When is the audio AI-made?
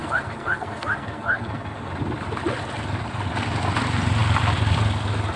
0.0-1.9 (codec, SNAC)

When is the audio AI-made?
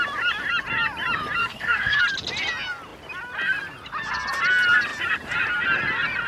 1.4-2.0 (codec, SNAC)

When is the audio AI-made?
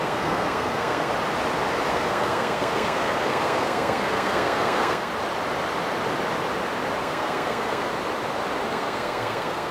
0.0-1.1 (codec, SNAC); 1.9-5.1; 7.0-7.9; 8.7-9.7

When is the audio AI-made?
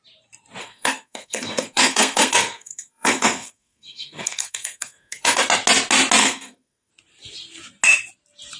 0.6-5.5 (codec, SNAC); 6.2-6.9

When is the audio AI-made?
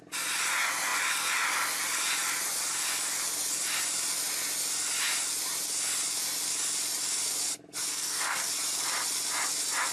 7.9-8.5 (codec, SNAC)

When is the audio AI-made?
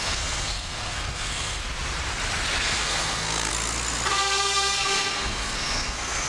0.0-1.6 (codec, SNAC); 2.6-3.5; 4.1-6.3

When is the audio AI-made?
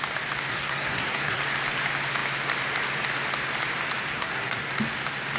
0.5-1.4 (codec, SNAC); 4.1-4.7